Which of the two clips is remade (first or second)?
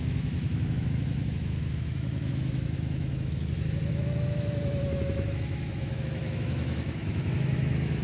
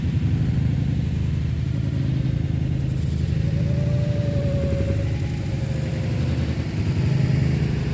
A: first